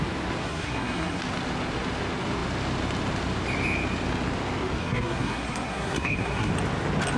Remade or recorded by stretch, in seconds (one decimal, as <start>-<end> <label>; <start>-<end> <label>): 0.0-0.4 recorded; 0.4-1.2 remade; 1.2-4.8 recorded; 4.8-6.5 remade; 6.5-7.2 recorded